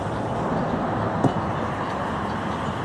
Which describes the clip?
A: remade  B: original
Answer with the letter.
B